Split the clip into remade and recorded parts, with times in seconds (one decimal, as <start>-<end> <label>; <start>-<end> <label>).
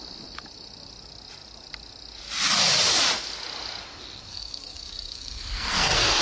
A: 0.0-4.3 recorded; 4.3-6.2 remade